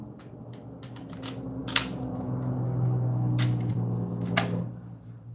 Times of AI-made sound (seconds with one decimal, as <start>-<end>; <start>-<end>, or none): none